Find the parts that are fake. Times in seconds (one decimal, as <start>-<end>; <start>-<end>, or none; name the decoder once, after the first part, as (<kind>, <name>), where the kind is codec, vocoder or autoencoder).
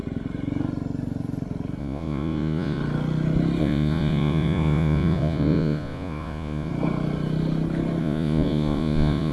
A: 1.8-2.8 (vocoder, Vocos); 3.6-6.7; 8.0-9.3